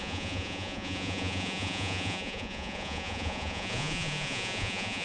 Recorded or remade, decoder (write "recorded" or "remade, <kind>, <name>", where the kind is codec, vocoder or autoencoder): remade, vocoder, Vocos